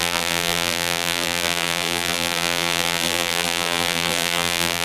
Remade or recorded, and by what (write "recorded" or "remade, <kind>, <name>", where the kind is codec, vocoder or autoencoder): remade, vocoder, BigVGAN v2